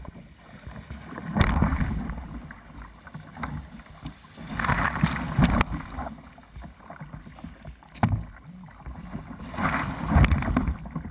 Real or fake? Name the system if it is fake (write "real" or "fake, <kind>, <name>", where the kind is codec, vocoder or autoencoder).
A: real